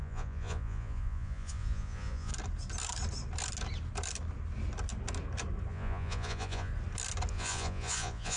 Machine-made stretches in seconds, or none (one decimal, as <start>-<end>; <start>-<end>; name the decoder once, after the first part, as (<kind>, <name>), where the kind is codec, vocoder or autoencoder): 0.0-2.3 (vocoder, Vocos); 5.7-6.7; 7.3-8.4